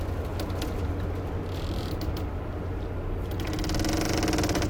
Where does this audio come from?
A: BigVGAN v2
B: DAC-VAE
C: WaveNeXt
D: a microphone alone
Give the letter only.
D